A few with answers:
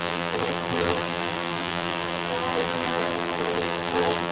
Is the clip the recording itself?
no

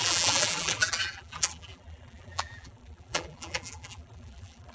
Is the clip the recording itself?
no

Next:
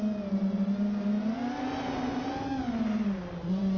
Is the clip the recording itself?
yes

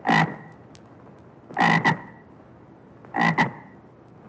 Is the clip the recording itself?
yes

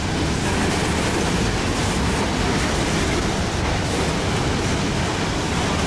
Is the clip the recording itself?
yes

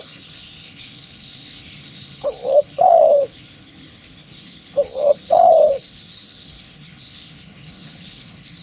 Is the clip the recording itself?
no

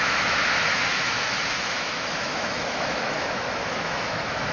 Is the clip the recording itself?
no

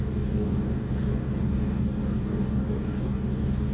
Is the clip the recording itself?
no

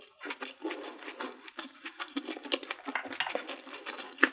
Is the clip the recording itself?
yes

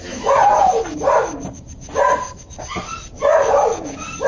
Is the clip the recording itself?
yes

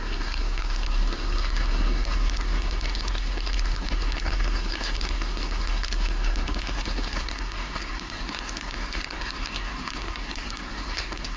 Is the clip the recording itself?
no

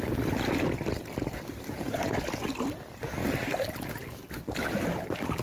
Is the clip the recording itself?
yes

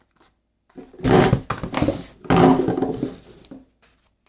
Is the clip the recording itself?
yes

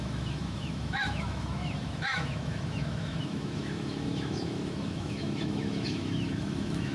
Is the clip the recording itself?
no